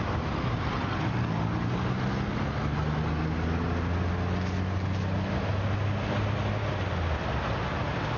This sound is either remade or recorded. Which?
recorded